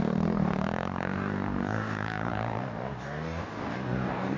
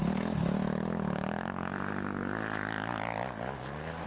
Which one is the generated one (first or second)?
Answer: first